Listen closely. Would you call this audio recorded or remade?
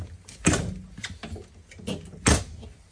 recorded